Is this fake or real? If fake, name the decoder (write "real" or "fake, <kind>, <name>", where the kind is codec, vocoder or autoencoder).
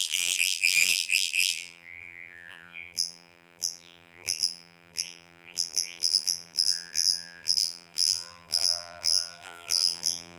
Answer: fake, vocoder, BigVGAN v2